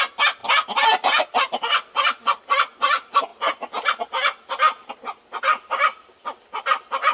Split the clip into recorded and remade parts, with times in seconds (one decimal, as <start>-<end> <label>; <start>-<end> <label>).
0.0-7.1 recorded